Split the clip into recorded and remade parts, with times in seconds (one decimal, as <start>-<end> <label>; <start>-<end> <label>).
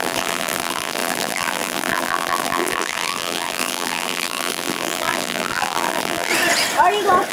0.0-6.3 remade; 6.3-7.3 recorded